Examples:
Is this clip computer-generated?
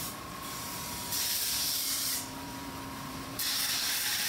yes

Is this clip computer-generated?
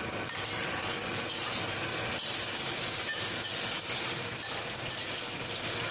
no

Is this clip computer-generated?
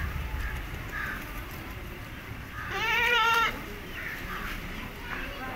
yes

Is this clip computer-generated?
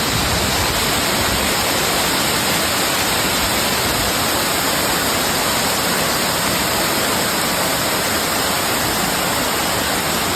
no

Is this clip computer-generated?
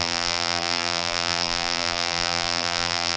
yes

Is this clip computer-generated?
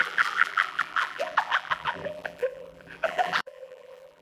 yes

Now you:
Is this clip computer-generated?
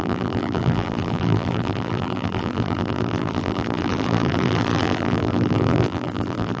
yes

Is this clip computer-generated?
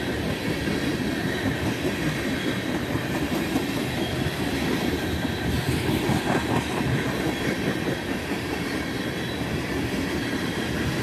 yes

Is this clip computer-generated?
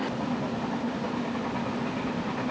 no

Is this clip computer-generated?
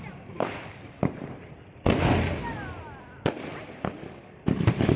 yes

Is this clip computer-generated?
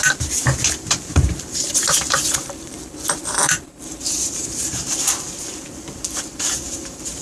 yes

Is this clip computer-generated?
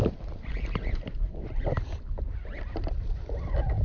no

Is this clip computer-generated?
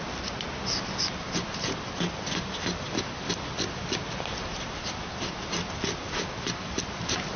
no